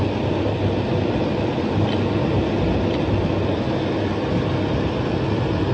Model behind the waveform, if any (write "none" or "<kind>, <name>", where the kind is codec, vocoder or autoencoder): none